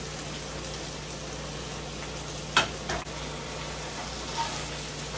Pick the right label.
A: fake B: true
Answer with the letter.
B